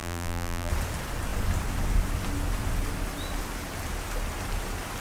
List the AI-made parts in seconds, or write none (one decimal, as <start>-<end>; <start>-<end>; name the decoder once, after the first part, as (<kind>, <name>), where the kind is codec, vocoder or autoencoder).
0.0-0.7 (vocoder, BigVGAN v2)